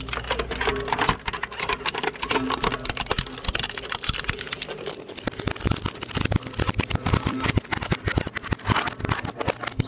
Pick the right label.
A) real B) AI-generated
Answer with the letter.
A